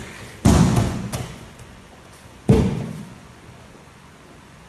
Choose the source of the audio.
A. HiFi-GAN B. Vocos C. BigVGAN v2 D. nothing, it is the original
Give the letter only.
B